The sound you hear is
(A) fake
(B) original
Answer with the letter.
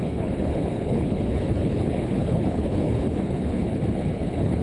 A